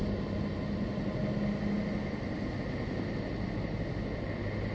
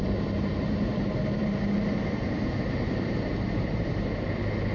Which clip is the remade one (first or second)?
second